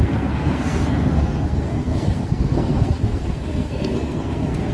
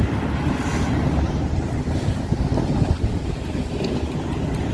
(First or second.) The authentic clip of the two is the second